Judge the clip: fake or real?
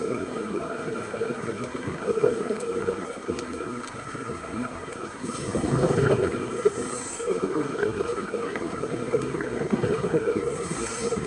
fake